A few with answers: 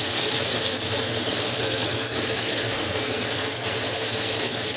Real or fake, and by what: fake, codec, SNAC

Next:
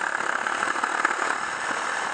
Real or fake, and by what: real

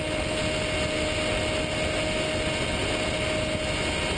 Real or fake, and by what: real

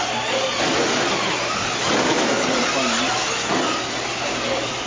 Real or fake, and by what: real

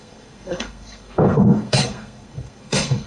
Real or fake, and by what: fake, codec, SNAC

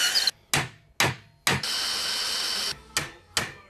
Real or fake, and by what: real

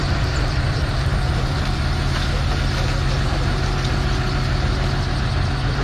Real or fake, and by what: real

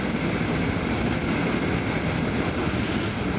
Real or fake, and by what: real